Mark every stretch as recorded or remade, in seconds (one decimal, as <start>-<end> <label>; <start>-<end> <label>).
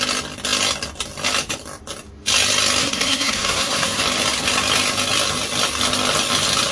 0.0-2.8 recorded; 2.8-4.0 remade; 4.0-6.7 recorded